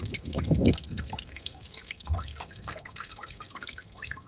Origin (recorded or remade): remade